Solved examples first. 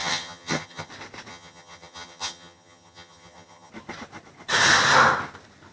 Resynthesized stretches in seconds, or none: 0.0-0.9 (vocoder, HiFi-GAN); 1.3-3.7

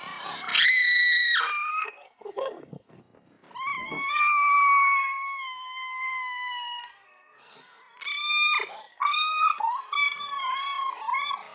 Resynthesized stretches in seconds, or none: 1.7-3.0 (codec, SNAC); 3.8-7.8; 8.9-9.8

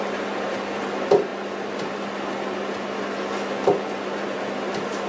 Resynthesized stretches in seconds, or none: none

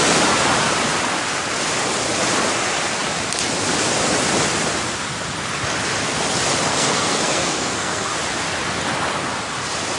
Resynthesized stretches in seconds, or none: 6.7-8.1 (codec, SNAC)

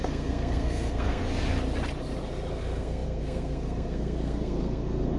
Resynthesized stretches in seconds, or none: 0.0-1.2 (codec, SNAC); 2.5-5.2